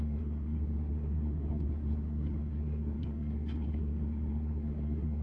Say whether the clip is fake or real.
fake